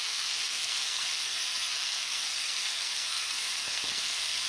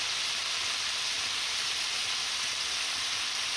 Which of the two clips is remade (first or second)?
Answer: first